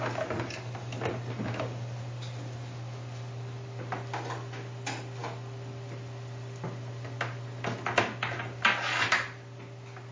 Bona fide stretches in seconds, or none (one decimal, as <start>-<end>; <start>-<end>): 0.0-10.1